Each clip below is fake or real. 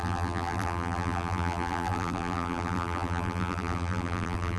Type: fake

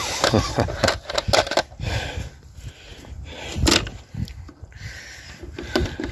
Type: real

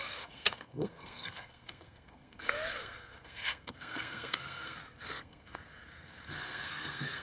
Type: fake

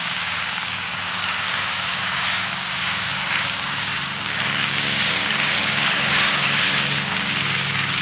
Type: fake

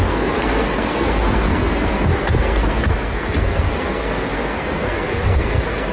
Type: fake